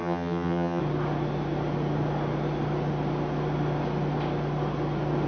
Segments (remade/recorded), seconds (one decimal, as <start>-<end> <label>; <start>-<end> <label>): 0.0-0.8 remade; 0.8-5.3 recorded